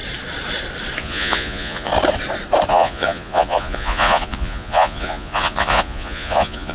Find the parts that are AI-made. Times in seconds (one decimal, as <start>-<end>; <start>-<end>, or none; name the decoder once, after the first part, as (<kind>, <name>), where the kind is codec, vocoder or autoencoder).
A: 1.0-1.9 (vocoder, Vocos); 2.7-6.7